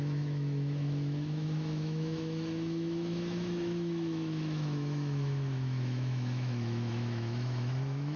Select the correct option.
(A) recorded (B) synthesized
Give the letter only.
B